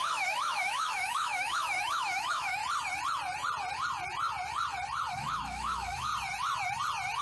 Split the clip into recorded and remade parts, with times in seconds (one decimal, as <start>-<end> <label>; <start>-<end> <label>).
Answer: 0.0-2.6 remade; 2.6-5.1 recorded; 5.1-6.1 remade; 6.1-7.2 recorded